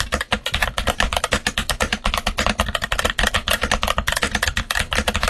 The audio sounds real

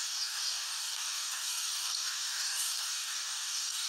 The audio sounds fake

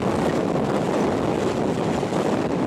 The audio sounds real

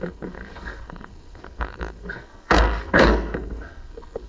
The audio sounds fake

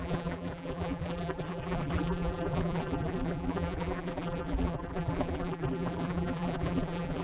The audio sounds fake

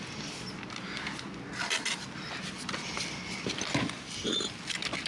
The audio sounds real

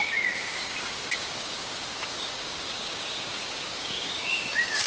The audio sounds fake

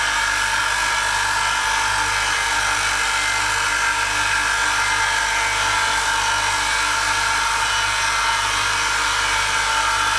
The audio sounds real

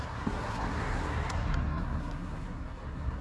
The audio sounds fake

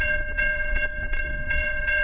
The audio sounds fake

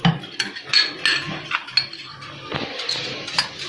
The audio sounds real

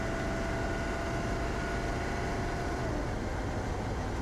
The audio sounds real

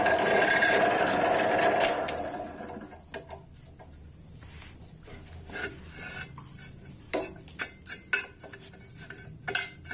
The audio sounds real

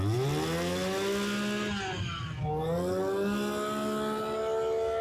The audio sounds real